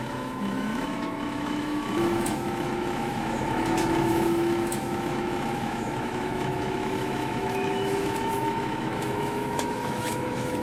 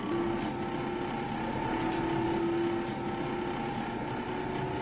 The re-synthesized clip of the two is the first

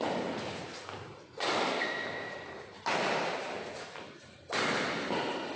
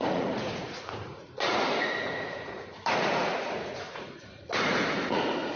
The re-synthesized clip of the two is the second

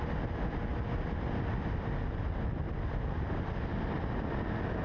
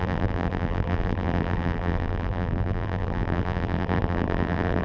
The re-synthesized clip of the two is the second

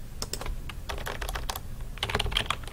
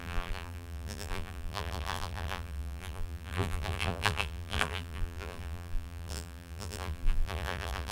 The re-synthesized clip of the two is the second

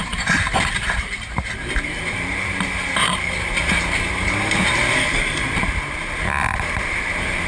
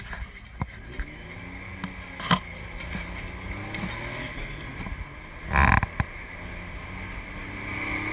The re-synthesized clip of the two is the first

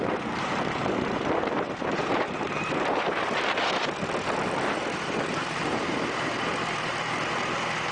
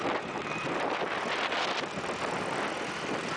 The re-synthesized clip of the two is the first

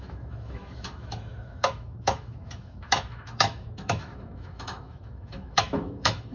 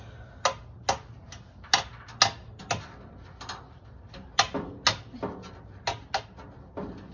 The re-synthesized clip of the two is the first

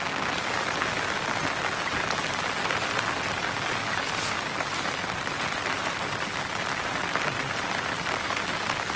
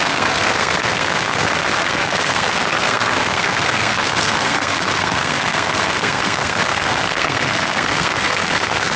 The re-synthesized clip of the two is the second